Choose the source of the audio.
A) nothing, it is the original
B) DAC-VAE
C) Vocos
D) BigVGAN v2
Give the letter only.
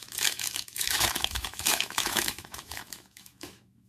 B